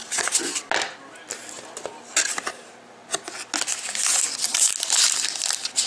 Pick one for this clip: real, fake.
real